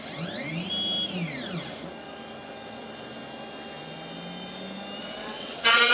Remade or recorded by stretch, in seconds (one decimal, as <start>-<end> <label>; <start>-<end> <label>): 0.0-5.0 recorded; 5.0-5.9 remade